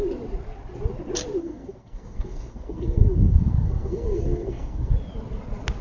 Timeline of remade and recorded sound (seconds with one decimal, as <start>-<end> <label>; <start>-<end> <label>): 0.0-1.4 recorded; 1.4-4.9 remade; 4.9-5.8 recorded